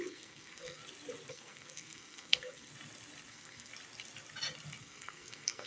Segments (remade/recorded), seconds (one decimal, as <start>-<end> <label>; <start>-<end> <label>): 0.0-0.8 remade; 0.8-1.3 recorded; 1.3-2.7 remade; 2.7-3.3 recorded; 3.3-3.7 remade; 3.7-4.8 recorded; 4.8-5.7 remade